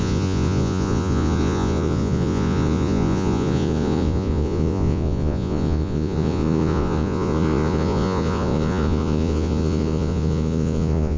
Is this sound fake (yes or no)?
yes